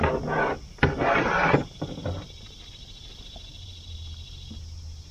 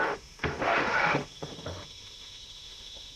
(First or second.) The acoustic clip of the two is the first